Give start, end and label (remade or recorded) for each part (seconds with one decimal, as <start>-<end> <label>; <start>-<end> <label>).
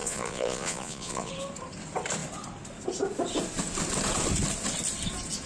0.0-1.3 remade; 1.3-5.5 recorded